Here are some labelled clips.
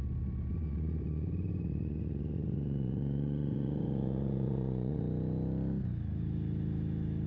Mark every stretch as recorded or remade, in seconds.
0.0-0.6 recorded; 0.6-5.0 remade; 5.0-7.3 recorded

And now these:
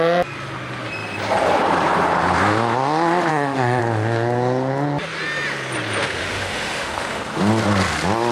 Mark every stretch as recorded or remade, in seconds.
0.0-3.3 recorded; 3.3-3.8 remade; 3.8-6.0 recorded; 6.0-7.4 remade; 7.4-8.3 recorded

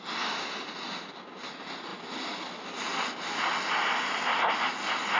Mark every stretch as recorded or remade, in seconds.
0.0-5.2 recorded

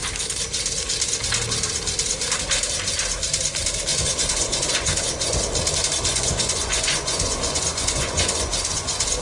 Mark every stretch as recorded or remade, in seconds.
0.0-3.9 recorded; 3.9-5.4 remade; 5.4-6.1 recorded; 6.1-9.2 remade

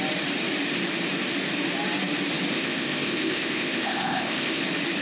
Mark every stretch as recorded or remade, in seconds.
0.0-2.5 recorded; 2.5-4.6 remade; 4.6-5.0 recorded

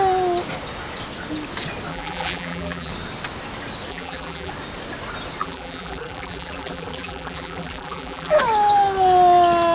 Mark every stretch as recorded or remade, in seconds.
0.0-1.9 recorded; 1.9-2.9 remade; 2.9-3.9 recorded; 3.9-4.5 remade; 4.5-5.4 recorded; 5.4-8.4 remade; 8.4-9.7 recorded